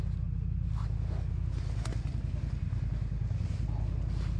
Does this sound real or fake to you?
real